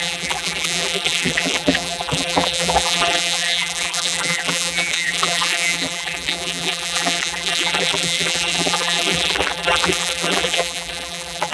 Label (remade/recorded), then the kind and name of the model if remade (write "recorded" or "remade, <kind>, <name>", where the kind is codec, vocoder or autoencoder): remade, vocoder, BigVGAN v2